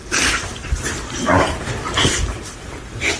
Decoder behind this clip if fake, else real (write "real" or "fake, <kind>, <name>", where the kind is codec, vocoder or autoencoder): fake, vocoder, BigVGAN v2